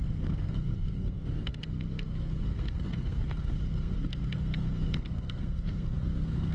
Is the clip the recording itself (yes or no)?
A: no